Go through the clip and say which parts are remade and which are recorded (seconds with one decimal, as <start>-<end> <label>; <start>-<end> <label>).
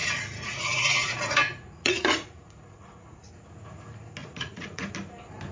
0.0-3.3 remade; 3.3-4.2 recorded; 4.2-4.9 remade; 4.9-5.5 recorded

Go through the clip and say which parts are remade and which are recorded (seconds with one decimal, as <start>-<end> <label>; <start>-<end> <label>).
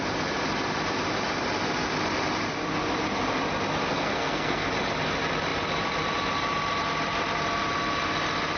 0.0-3.9 recorded; 3.9-4.7 remade; 4.7-8.6 recorded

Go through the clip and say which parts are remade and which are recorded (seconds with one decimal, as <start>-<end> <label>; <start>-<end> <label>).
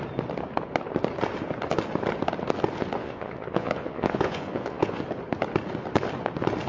0.0-3.0 recorded; 3.0-5.0 remade; 5.0-6.7 recorded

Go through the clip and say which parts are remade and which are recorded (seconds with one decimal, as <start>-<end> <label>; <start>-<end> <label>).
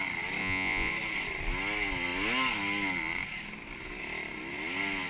0.0-0.4 recorded; 0.4-0.9 remade; 0.9-5.1 recorded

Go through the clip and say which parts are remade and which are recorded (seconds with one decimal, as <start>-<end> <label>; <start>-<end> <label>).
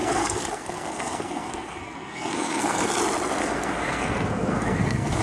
0.0-2.9 remade; 2.9-3.4 recorded; 3.4-5.2 remade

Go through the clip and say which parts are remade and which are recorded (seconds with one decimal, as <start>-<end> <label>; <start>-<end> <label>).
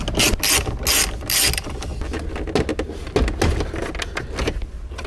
0.0-5.1 recorded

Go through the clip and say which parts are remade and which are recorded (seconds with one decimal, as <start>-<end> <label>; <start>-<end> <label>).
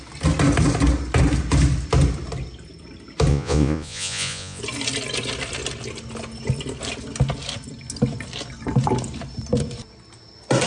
0.0-3.3 recorded; 3.3-4.6 remade; 4.6-10.7 recorded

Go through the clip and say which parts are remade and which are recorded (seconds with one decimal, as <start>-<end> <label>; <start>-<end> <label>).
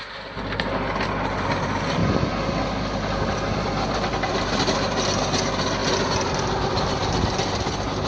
0.0-8.1 recorded